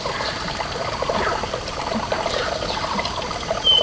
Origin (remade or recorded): remade